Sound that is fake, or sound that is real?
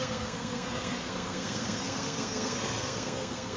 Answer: fake